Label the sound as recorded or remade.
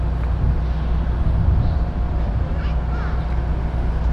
recorded